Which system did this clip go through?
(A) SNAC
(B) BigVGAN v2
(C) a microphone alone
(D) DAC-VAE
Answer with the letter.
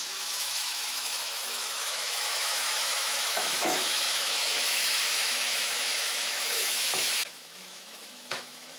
D